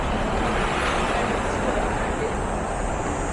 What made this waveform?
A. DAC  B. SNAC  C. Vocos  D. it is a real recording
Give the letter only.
D